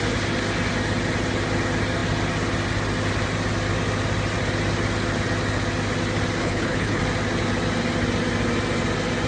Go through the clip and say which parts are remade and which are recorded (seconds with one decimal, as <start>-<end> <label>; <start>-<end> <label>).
0.0-6.4 recorded; 6.4-7.0 remade; 7.0-9.3 recorded